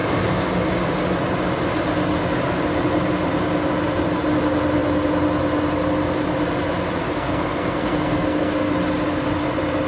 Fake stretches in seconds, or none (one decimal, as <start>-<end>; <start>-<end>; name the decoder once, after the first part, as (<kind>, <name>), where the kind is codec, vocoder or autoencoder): 7.0-8.7 (codec, SNAC)